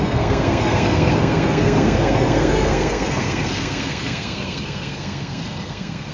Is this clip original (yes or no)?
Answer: no